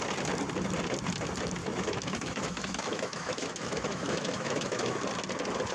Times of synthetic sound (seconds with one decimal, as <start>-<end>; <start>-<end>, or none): 1.6-5.0